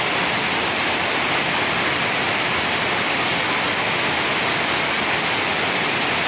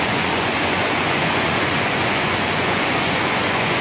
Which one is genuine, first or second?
first